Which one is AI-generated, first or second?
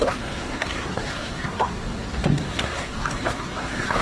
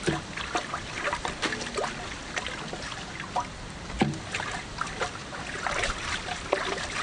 first